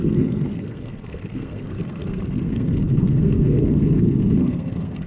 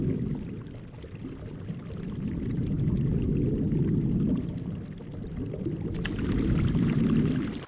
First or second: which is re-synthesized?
first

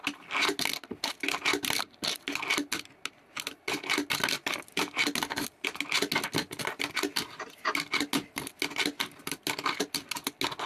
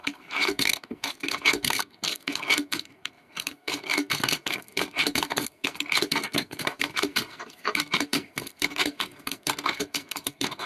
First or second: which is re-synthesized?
second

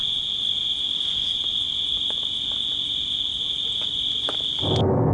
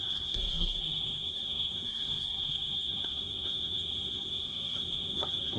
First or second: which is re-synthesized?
second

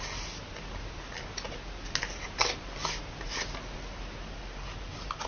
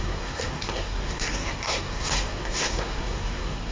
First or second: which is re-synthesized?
second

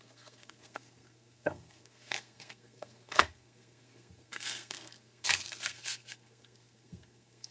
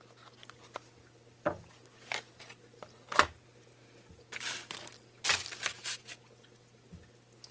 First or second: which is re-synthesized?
first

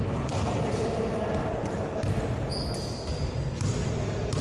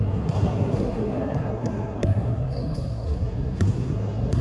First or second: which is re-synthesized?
second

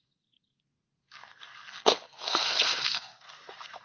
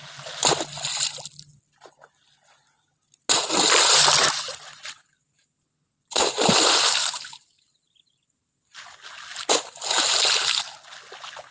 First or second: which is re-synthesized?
first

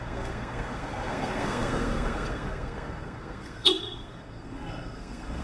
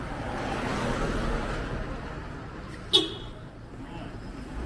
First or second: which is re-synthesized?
first